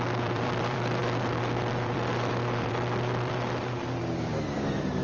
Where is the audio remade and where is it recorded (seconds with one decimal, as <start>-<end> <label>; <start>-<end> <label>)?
0.0-5.0 remade